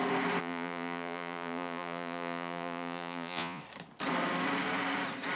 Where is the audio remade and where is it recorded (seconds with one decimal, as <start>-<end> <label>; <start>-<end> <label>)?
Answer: 0.0-0.4 recorded; 0.4-3.6 remade; 3.6-5.4 recorded